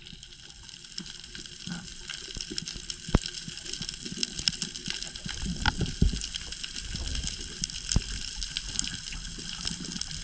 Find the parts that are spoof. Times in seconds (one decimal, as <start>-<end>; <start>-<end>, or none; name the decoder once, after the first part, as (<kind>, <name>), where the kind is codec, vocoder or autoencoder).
0.0-4.2 (vocoder, BigVGAN v2); 8.2-10.2